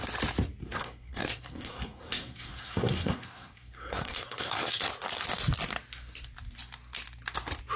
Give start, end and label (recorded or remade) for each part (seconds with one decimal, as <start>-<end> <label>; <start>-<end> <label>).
0.0-0.6 recorded; 0.6-4.9 remade; 4.9-7.8 recorded